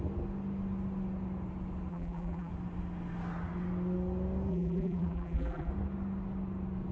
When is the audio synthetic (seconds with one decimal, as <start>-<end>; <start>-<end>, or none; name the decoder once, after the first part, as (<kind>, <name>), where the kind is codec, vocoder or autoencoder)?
1.9-2.5 (vocoder, BigVGAN v2); 4.5-5.7